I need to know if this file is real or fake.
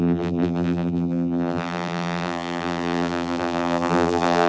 fake